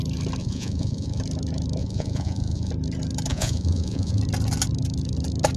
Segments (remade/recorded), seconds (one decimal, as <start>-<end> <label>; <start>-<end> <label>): 0.0-0.4 recorded; 0.4-1.2 remade; 1.2-1.8 recorded; 1.8-2.7 remade; 2.7-3.3 recorded; 3.3-4.2 remade; 4.2-5.6 recorded